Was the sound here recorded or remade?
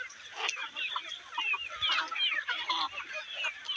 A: recorded